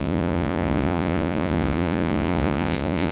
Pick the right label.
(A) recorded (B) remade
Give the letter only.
B